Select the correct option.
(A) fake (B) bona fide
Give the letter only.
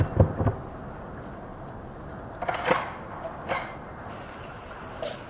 B